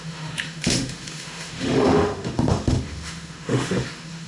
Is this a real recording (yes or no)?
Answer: no